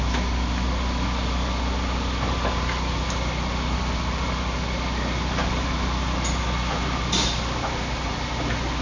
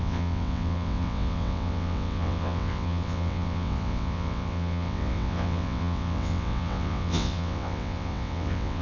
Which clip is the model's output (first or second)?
second